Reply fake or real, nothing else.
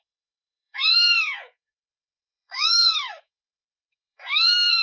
fake